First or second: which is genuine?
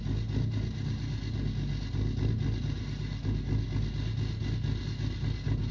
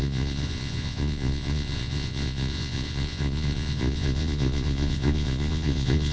first